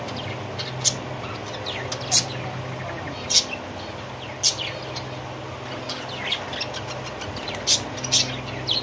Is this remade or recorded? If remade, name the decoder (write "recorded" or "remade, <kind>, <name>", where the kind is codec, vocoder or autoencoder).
recorded